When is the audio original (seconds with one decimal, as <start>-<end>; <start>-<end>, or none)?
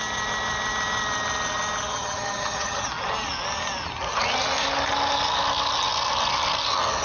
0.0-1.9; 2.8-7.0